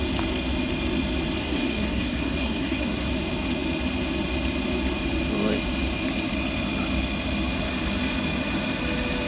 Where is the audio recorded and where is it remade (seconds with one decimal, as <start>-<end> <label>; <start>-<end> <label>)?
0.0-1.4 recorded; 1.4-3.1 remade; 3.1-9.3 recorded